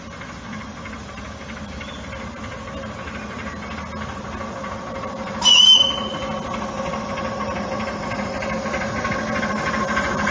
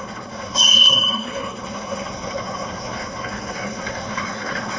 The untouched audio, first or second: first